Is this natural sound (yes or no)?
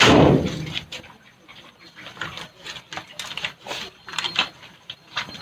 yes